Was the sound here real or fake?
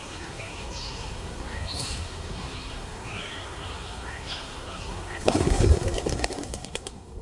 fake